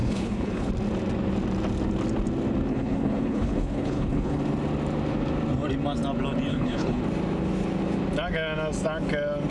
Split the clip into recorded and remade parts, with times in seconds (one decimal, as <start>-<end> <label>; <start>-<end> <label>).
0.0-0.7 remade; 0.7-2.7 recorded; 2.7-4.4 remade; 4.4-6.5 recorded; 6.5-7.0 remade; 7.0-9.5 recorded

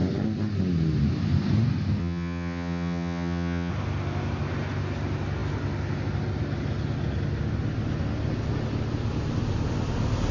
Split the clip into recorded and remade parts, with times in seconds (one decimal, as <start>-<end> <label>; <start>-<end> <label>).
0.0-2.0 recorded; 2.0-3.7 remade; 3.7-10.3 recorded

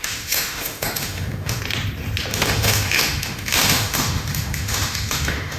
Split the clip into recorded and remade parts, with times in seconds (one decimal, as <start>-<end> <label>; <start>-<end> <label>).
0.0-1.6 remade; 1.6-2.3 recorded; 2.3-5.6 remade

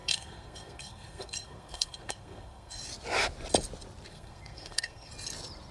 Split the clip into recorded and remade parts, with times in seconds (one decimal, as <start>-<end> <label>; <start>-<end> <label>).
0.0-2.8 remade; 2.8-4.1 recorded; 4.1-5.1 remade; 5.1-5.7 recorded

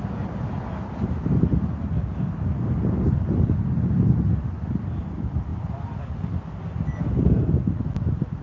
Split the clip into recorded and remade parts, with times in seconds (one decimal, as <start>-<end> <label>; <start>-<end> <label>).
0.0-8.4 recorded

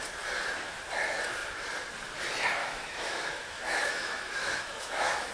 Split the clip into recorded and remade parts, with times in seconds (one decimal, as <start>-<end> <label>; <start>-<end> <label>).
0.0-2.6 recorded; 2.6-5.3 remade